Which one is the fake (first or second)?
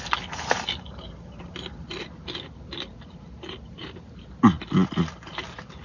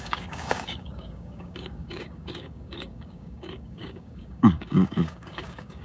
second